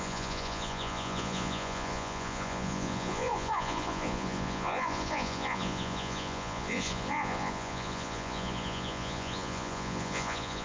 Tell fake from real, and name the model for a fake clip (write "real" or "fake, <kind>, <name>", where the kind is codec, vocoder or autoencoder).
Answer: fake, vocoder, Vocos